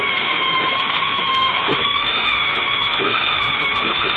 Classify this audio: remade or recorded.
remade